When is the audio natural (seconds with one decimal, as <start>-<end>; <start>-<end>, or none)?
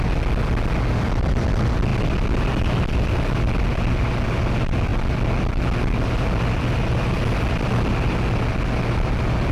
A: 0.0-9.5